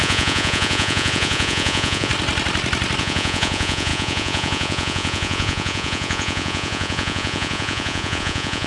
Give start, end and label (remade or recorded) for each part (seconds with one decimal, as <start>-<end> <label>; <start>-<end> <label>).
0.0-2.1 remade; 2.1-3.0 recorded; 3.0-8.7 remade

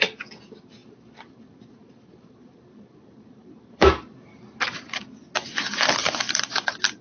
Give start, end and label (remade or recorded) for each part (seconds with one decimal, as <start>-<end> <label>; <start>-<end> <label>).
0.0-0.8 recorded; 0.8-5.0 remade; 5.0-6.0 recorded; 6.0-7.0 remade

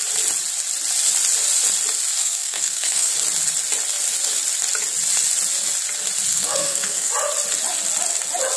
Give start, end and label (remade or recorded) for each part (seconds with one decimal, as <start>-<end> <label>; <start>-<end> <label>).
0.0-2.2 recorded; 2.2-3.1 remade; 3.1-6.3 recorded; 6.3-7.1 remade; 7.1-8.6 recorded